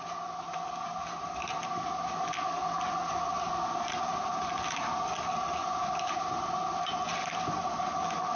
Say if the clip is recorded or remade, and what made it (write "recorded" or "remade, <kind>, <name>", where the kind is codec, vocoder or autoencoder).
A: recorded